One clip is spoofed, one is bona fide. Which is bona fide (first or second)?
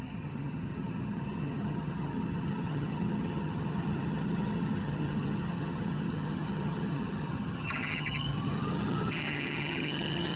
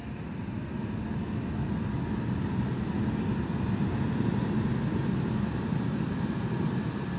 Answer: second